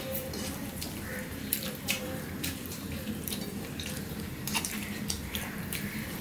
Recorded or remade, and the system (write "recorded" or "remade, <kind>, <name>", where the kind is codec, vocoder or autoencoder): remade, vocoder, BigVGAN v2